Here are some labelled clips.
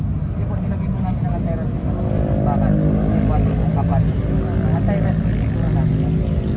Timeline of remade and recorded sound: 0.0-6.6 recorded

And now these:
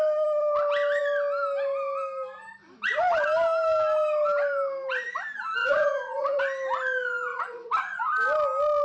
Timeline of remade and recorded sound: 0.0-5.6 recorded; 5.6-6.4 remade; 6.4-7.3 recorded; 7.3-8.0 remade; 8.0-8.8 recorded